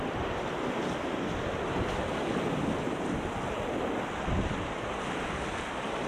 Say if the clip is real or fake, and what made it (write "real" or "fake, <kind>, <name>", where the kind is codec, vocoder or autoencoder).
real